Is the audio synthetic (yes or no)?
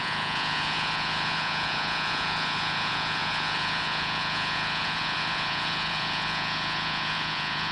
yes